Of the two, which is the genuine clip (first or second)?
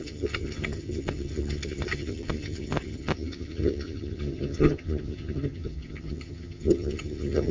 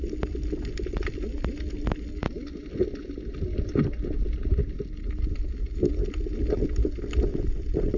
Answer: second